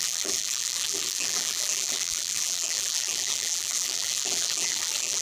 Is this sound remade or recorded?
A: remade